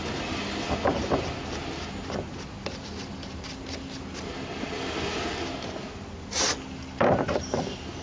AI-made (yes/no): no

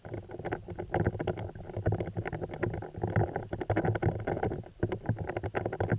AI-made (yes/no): no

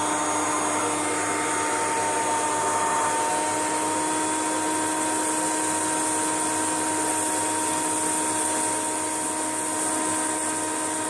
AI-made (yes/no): no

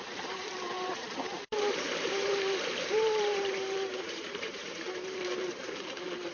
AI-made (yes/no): yes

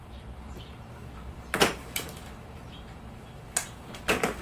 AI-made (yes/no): yes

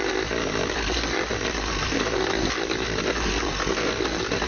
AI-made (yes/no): no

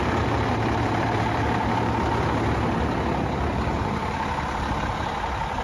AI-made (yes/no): no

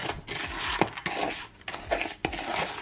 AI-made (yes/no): no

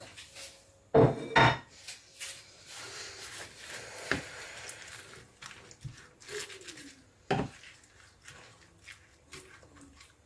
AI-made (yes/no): no